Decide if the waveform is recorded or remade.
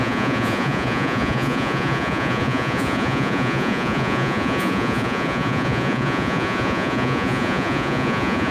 remade